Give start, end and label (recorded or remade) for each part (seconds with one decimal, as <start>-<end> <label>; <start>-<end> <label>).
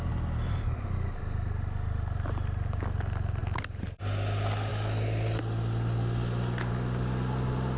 0.0-7.8 recorded